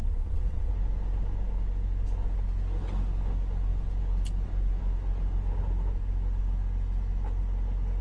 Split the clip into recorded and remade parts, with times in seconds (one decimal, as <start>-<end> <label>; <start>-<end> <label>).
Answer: 0.0-0.7 remade; 0.7-8.0 recorded